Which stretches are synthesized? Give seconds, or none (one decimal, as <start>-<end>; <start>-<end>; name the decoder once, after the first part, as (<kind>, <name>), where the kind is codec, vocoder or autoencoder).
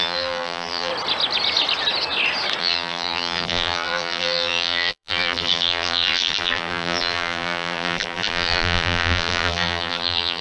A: 0.0-0.9 (vocoder, BigVGAN v2); 2.6-10.4